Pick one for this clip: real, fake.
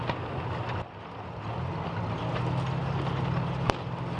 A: real